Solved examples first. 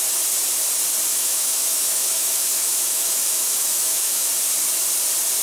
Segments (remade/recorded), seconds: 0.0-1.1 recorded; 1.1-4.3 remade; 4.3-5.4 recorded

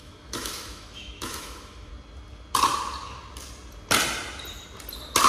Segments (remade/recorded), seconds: 0.0-1.9 remade; 1.9-5.3 recorded

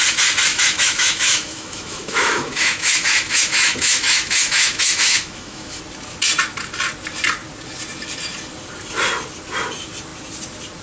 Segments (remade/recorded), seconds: 0.0-0.5 recorded; 0.5-5.8 remade; 5.8-10.8 recorded